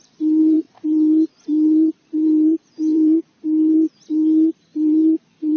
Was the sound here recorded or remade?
remade